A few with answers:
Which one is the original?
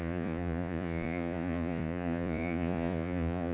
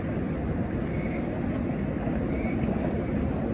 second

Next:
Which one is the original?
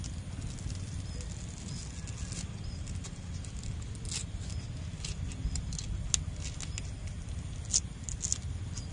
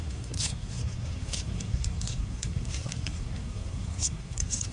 first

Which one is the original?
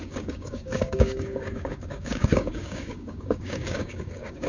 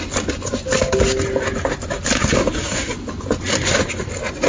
second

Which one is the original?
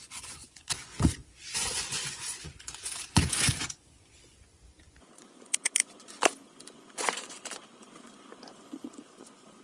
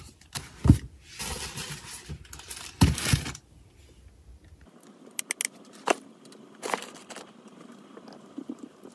second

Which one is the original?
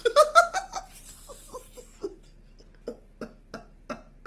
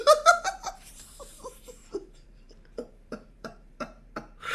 first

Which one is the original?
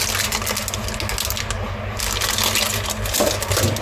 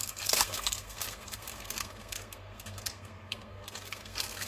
first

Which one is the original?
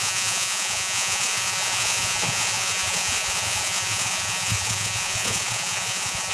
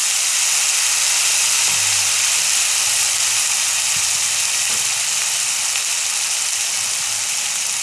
second